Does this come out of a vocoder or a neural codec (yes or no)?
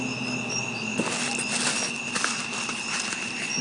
no